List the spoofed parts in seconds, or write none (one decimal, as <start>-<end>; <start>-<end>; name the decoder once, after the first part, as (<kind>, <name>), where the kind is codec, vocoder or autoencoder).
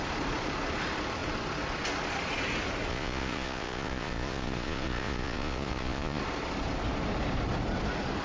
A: 2.9-6.2 (vocoder, Vocos)